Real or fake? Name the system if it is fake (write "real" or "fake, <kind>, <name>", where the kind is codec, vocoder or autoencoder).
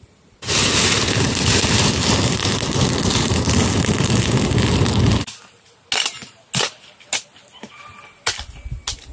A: real